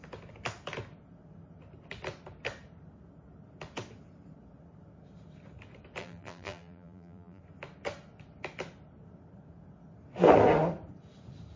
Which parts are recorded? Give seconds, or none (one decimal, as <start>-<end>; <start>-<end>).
0.0-6.0; 7.4-11.6